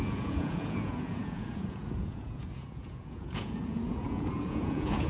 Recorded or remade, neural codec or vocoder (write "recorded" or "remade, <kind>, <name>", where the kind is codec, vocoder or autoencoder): remade, vocoder, Vocos